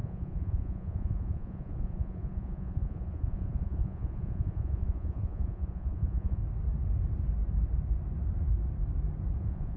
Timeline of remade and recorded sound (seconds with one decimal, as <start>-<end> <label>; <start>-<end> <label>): 0.0-6.4 remade; 6.4-9.4 recorded; 9.4-9.8 remade